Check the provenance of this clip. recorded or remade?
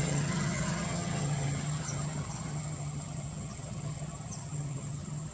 remade